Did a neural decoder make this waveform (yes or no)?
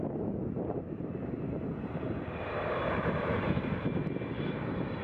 yes